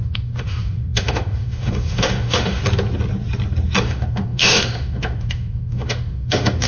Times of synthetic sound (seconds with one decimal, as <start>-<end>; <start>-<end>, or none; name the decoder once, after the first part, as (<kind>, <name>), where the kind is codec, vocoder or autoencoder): 0.0-2.6 (autoencoder, DAC-VAE); 3.8-6.7

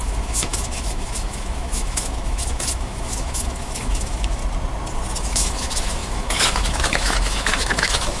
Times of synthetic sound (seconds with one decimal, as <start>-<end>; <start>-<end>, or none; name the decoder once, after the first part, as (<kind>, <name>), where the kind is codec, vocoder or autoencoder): 0.0-4.4 (autoencoder, DAC-VAE); 5.2-8.2

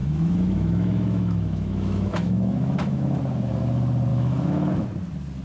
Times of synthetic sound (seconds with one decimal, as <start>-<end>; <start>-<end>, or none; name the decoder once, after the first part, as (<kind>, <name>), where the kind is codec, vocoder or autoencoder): 0.0-3.2 (autoencoder, DAC-VAE); 4.1-4.7

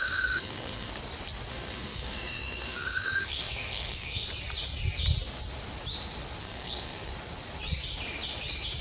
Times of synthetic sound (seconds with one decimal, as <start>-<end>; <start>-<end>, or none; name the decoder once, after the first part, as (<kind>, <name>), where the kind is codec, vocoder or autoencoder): 0.0-0.9 (autoencoder, DAC-VAE); 1.5-4.2; 6.4-7.1

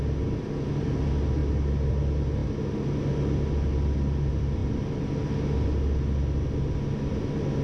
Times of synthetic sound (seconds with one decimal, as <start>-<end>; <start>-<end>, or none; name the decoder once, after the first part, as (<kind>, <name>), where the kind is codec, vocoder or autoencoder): none

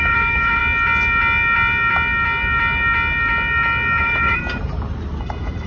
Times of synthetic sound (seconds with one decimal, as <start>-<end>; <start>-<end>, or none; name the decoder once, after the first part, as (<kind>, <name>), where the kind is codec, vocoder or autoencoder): 0.0-0.6 (autoencoder, DAC-VAE); 4.0-4.4; 5.2-5.7

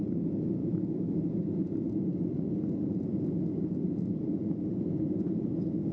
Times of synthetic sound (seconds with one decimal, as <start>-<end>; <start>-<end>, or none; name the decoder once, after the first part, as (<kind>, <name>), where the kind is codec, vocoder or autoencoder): 0.6-1.2 (autoencoder, DAC-VAE)